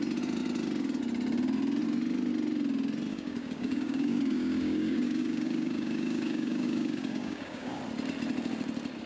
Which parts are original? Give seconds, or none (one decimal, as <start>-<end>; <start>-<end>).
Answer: 0.0-3.1; 7.8-9.1